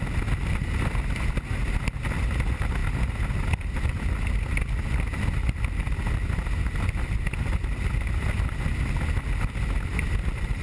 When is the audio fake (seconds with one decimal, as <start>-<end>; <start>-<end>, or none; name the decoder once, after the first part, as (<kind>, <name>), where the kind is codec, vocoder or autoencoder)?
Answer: none